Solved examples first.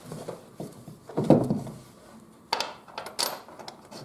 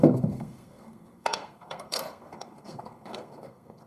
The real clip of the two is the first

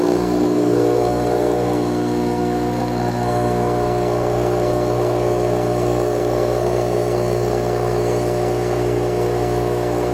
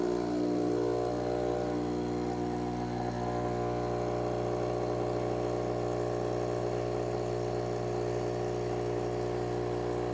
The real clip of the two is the second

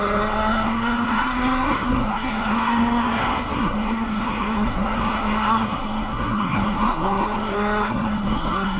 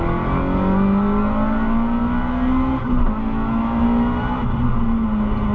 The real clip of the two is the second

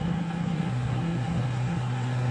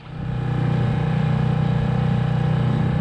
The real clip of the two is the second